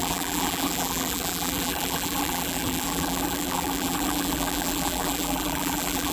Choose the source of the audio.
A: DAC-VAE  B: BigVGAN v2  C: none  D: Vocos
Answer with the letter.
B